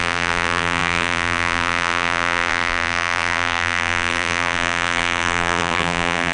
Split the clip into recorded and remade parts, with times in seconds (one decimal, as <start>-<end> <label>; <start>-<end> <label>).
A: 0.0-6.3 remade